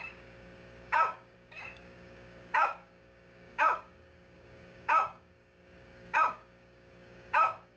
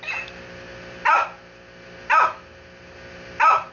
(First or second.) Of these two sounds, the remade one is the first